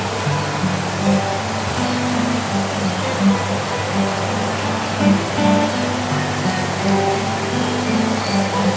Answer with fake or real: real